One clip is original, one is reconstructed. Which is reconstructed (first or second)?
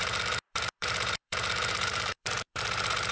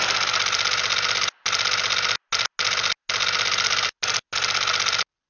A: first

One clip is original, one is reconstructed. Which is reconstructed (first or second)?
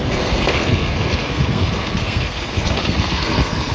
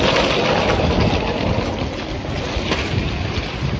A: first